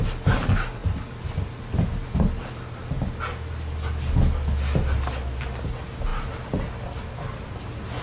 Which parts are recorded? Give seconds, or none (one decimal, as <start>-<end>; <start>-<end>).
0.0-8.0